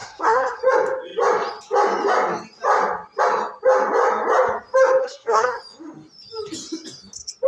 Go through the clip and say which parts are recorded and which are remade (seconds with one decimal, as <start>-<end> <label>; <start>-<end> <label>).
0.0-0.6 remade; 0.6-5.0 recorded; 5.0-5.6 remade; 5.6-7.5 recorded